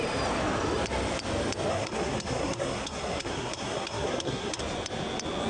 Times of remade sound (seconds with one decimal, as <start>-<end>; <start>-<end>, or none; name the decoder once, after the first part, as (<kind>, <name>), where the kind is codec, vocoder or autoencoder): 1.7-4.6 (codec, SNAC)